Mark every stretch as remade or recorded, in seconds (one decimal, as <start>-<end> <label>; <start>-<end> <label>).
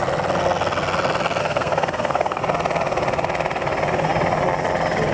0.0-1.4 recorded; 1.4-2.4 remade; 2.4-5.1 recorded